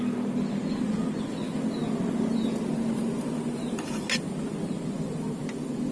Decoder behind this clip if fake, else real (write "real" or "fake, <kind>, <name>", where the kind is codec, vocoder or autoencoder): real